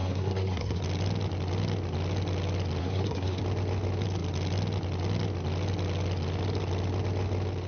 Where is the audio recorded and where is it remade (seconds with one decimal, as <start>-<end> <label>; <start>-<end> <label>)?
0.0-0.8 remade; 0.8-2.8 recorded; 2.8-3.4 remade; 3.4-7.7 recorded